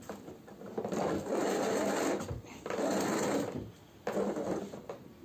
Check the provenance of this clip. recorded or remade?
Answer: recorded